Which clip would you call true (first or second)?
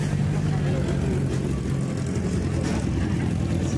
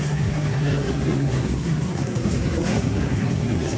first